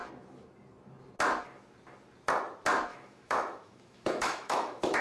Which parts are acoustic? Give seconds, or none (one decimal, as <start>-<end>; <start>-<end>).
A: 0.0-2.9